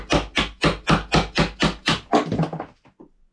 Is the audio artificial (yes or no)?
no